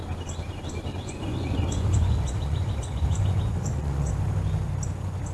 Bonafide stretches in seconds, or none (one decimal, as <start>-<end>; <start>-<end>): 0.0-0.9; 4.1-5.3